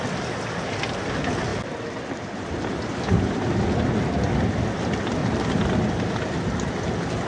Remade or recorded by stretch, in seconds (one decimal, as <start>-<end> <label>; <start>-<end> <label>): 0.0-1.5 recorded; 1.5-3.6 remade; 3.6-5.2 recorded; 5.2-6.4 remade; 6.4-7.3 recorded